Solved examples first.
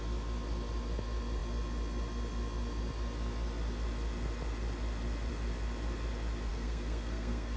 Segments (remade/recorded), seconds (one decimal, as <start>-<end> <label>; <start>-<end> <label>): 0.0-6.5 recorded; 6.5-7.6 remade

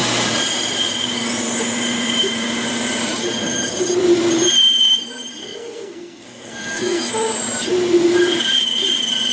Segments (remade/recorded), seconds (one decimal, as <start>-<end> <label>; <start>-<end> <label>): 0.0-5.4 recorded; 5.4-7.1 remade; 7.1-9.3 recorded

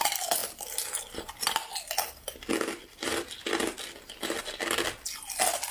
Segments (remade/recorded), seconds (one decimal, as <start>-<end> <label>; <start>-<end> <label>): 0.0-5.7 recorded

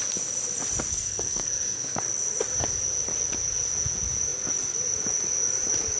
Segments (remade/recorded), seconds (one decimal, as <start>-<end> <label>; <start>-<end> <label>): 0.0-0.9 recorded; 0.9-2.0 remade; 2.0-6.0 recorded